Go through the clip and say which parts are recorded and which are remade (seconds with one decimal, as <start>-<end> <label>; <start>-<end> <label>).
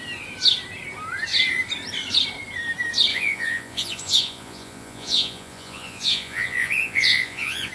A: 0.0-3.1 recorded; 3.1-7.7 remade